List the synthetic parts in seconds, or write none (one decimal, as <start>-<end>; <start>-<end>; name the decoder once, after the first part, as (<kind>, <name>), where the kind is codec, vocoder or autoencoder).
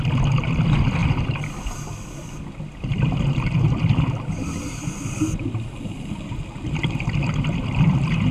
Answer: none